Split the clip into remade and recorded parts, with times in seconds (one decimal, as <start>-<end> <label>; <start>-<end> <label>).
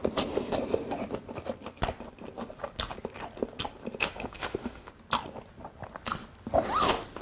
0.0-4.0 recorded; 4.0-4.9 remade; 4.9-7.2 recorded